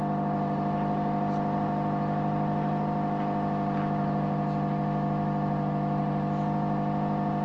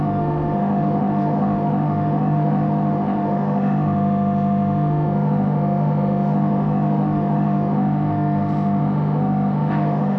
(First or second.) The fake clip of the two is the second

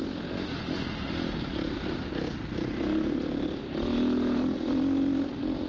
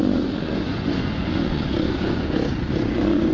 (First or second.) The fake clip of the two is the second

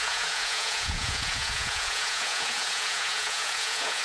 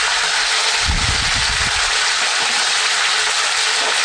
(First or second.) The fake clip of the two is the first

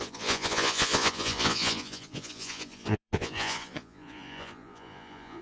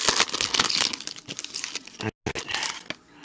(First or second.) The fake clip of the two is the first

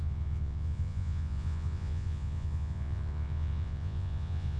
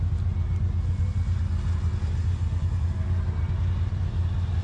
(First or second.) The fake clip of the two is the first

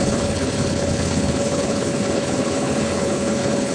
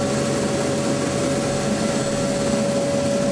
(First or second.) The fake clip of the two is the first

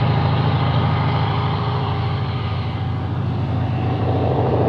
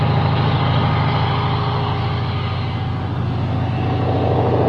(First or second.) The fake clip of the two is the first